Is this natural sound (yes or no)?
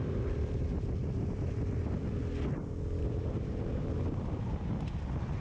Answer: yes